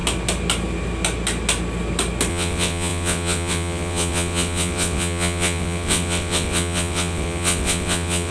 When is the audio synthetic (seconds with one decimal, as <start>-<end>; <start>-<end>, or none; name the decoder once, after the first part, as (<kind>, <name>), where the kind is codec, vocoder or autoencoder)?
2.3-8.3 (vocoder, WaveNeXt)